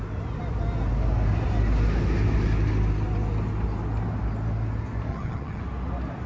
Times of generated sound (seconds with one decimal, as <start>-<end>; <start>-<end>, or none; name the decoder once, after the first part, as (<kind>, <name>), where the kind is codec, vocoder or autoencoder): 5.1-5.6 (vocoder, HiFi-GAN)